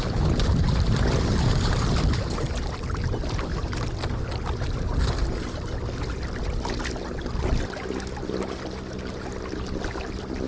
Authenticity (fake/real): real